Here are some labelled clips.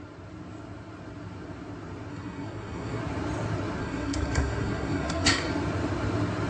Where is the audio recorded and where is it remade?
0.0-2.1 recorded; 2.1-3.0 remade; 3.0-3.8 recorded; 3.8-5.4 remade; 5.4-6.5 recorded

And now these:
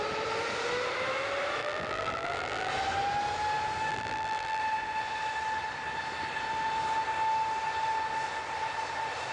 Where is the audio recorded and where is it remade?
0.0-1.6 recorded; 1.6-2.7 remade; 2.7-3.9 recorded; 3.9-4.6 remade; 4.6-9.3 recorded

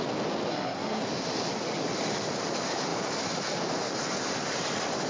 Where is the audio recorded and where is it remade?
0.0-0.5 recorded; 0.5-1.0 remade; 1.0-5.1 recorded

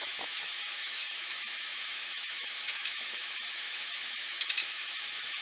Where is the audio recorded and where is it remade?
0.0-5.4 remade